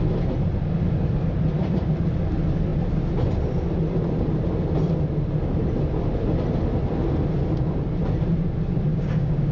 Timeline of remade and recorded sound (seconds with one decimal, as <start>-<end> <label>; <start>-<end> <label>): 0.0-8.9 recorded; 8.9-9.5 remade

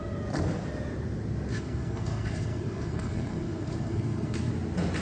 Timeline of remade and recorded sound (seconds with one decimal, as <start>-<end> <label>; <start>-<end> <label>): 0.0-1.5 recorded; 1.5-4.5 remade; 4.5-5.0 recorded

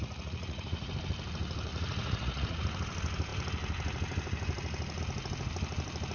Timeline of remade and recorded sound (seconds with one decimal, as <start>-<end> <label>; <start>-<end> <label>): 0.0-0.9 remade; 0.9-1.7 recorded; 1.7-2.6 remade; 2.6-6.1 recorded

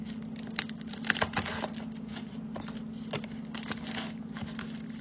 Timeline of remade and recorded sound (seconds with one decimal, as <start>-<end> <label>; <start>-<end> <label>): 0.0-5.0 recorded

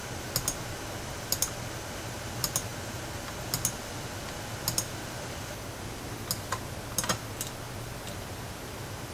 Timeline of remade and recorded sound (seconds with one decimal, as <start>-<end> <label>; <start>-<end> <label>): 0.0-9.1 recorded

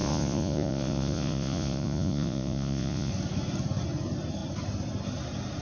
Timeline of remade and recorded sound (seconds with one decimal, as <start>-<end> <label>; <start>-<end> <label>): 0.0-3.1 remade; 3.1-5.6 recorded